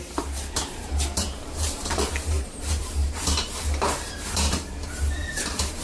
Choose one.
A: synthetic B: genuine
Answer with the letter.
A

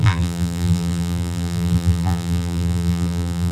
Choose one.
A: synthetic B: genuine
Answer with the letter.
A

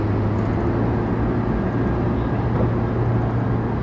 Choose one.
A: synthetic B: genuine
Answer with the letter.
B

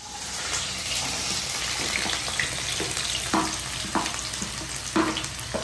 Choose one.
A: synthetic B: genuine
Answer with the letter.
B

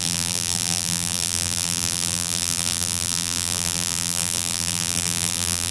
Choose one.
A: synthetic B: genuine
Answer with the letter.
A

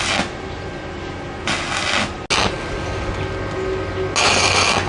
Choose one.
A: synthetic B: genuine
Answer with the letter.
B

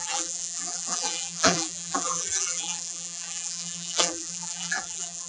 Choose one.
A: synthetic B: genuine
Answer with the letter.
A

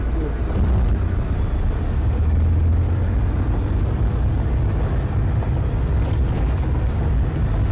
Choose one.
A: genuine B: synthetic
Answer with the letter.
A